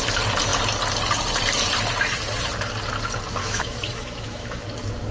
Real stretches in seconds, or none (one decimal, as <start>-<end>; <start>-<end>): 0.0-3.4; 4.6-5.1